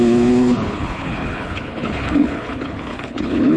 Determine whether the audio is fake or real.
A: fake